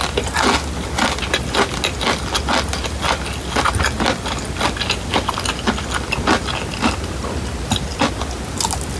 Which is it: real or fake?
real